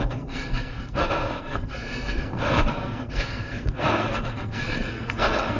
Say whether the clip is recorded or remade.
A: remade